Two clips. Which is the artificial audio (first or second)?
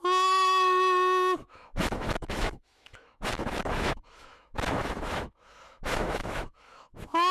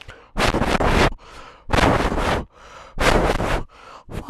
first